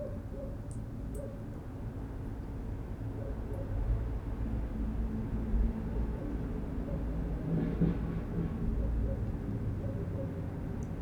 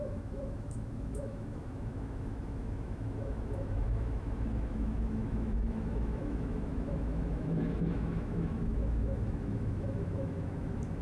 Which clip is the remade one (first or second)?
second